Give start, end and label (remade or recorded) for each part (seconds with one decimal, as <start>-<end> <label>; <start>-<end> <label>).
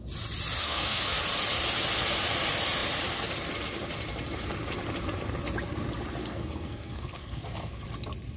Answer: 0.0-0.6 recorded; 0.6-1.2 remade; 1.2-6.2 recorded; 6.2-7.7 remade; 7.7-8.4 recorded